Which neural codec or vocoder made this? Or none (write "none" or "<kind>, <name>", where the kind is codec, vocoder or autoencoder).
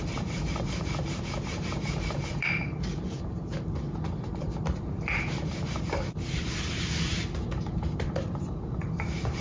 vocoder, BigVGAN v2